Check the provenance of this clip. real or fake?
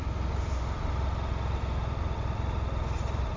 real